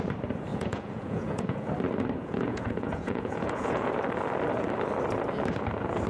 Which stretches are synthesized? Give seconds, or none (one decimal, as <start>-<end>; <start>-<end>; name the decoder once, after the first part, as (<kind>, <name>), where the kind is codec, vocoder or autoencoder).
0.5-1.7 (vocoder, Vocos); 2.2-3.9